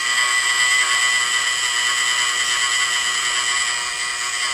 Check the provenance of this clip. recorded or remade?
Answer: recorded